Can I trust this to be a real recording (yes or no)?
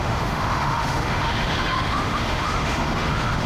no